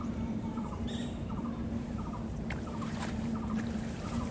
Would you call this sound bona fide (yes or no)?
no